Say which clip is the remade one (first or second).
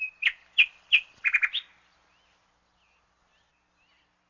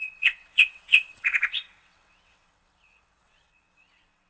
second